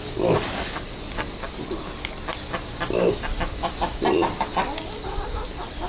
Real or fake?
real